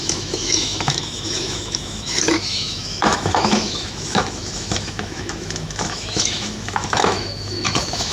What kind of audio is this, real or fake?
fake